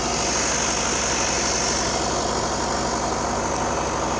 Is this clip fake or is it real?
real